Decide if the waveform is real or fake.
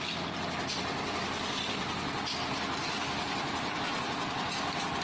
real